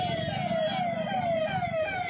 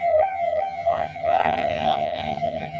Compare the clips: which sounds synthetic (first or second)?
second